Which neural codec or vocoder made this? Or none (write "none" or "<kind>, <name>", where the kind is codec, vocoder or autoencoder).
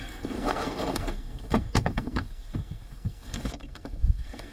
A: codec, SNAC